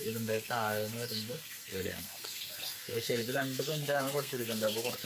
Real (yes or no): no